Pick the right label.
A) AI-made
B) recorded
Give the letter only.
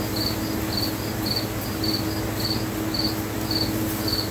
B